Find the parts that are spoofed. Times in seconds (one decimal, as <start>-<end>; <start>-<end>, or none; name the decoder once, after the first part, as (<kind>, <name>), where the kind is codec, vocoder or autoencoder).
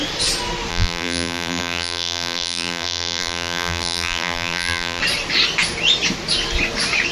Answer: 0.7-5.0 (vocoder, BigVGAN v2)